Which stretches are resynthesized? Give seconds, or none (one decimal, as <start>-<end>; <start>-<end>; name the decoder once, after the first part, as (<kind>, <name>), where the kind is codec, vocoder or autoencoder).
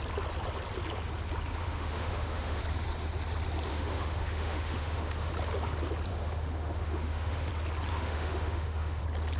1.6-2.6 (autoencoder, DAC-VAE); 3.7-5.3; 6.1-7.5; 7.9-9.0